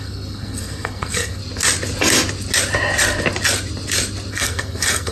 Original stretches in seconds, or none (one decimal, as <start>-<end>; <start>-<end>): 1.4-4.3

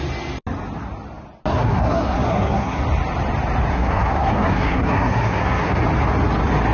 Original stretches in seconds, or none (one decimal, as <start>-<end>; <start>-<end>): 0.0-1.5; 2.8-3.7; 5.8-6.7

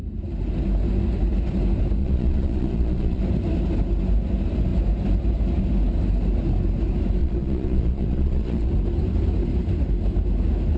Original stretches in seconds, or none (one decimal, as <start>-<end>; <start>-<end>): 0.0-2.0; 3.2-7.2; 8.7-10.8